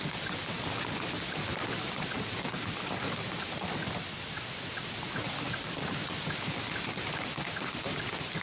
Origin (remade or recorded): recorded